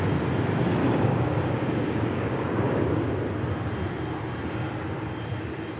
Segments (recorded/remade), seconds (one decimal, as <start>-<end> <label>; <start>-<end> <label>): 0.0-0.8 recorded; 0.8-3.0 remade; 3.0-5.8 recorded